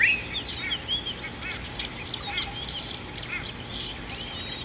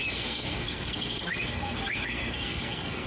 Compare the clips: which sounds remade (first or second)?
second